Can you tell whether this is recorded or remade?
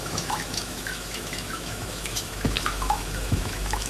remade